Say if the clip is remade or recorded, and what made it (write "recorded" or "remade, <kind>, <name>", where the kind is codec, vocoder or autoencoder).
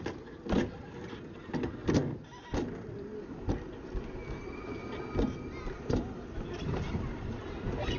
recorded